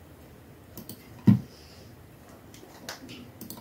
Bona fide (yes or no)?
yes